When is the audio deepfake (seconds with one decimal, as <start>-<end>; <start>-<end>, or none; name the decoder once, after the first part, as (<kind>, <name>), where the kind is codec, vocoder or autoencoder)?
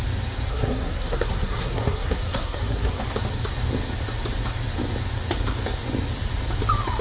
0.5-3.0 (codec, SNAC)